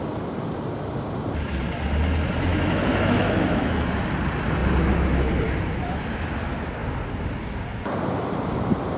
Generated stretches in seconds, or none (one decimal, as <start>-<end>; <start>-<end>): 2.5-3.8